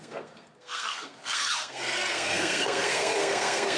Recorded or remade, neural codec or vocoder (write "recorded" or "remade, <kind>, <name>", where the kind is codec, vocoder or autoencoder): remade, codec, SNAC